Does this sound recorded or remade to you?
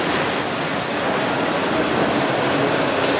recorded